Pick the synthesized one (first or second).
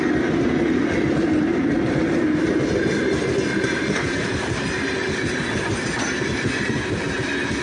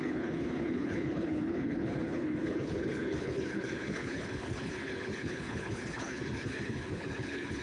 second